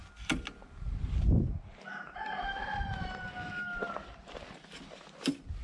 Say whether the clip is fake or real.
real